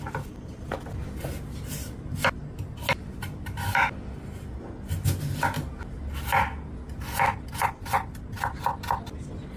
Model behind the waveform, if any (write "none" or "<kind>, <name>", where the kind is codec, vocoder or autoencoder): none